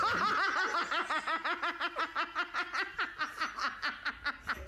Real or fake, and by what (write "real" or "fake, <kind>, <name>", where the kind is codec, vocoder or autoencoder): real